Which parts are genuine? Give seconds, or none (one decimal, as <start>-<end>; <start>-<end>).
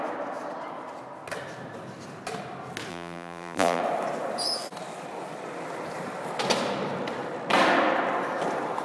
0.0-2.9; 3.8-8.8